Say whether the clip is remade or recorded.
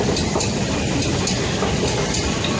recorded